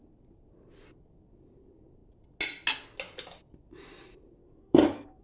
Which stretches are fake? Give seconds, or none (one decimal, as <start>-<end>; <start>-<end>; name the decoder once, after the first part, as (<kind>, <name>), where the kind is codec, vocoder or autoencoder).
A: 4.4-5.2 (codec, DAC)